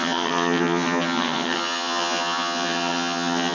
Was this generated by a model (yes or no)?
yes